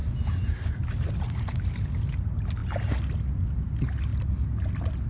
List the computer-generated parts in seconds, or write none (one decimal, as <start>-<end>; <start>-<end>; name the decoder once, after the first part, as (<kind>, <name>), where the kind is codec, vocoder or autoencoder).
none